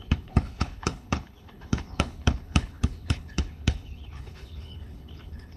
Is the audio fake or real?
fake